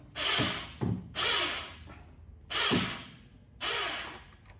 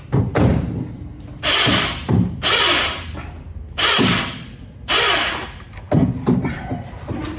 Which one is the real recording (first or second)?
first